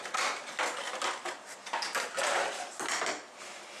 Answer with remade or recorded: recorded